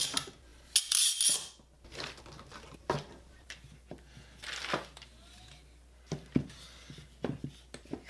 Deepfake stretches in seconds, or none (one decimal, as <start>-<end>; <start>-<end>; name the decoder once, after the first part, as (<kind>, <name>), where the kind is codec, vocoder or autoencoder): none